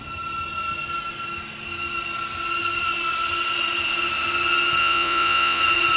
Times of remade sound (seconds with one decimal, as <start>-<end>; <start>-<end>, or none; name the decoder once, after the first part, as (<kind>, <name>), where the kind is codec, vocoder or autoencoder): 4.8-5.6 (vocoder, Vocos)